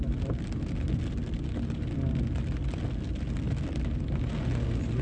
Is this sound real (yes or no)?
yes